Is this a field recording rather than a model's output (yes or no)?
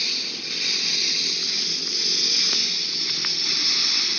yes